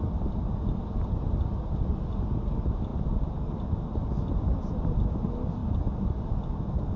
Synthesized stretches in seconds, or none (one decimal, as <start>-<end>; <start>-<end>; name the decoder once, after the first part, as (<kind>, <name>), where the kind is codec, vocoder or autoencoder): none